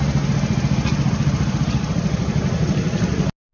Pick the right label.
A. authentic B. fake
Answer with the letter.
A